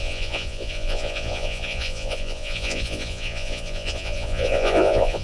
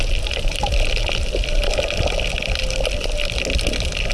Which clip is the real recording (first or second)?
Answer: second